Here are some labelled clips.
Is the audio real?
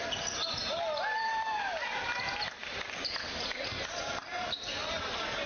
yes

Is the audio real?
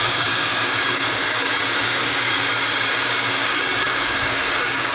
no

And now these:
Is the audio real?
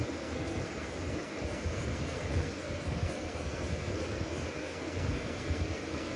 no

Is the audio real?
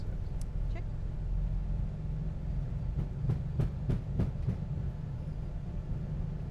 yes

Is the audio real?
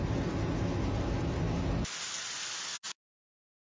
yes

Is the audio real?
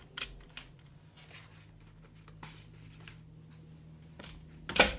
yes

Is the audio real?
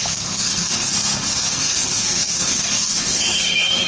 no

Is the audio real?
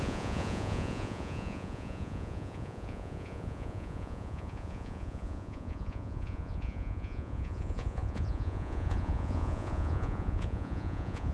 no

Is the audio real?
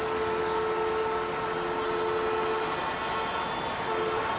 yes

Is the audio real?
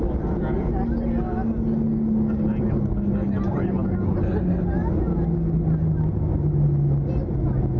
yes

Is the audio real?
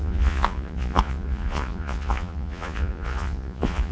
no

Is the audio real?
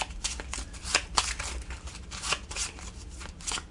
yes